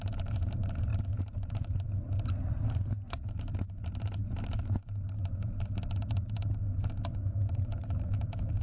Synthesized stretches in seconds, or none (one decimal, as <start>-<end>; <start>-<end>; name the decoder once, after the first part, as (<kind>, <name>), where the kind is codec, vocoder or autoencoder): none

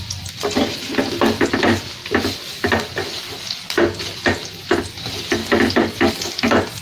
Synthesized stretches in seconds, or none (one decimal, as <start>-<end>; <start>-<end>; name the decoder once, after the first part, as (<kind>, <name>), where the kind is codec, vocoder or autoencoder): none

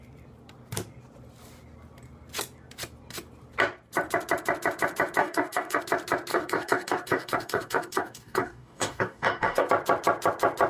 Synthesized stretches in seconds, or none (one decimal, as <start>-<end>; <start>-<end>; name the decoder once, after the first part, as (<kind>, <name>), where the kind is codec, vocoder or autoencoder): 5.2-5.8 (codec, DAC); 6.3-9.7